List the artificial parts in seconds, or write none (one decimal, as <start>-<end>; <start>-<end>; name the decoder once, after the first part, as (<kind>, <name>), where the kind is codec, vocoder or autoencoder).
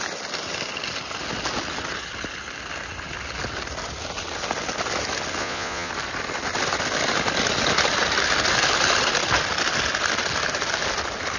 5.4-5.9 (vocoder, Vocos)